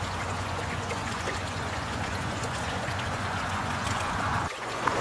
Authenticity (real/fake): fake